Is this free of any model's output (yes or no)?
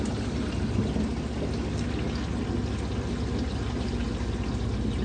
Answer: yes